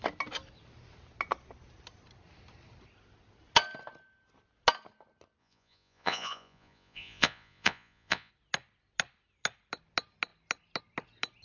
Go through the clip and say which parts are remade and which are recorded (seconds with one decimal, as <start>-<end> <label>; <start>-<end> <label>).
0.0-5.4 recorded; 5.4-8.3 remade; 8.3-11.4 recorded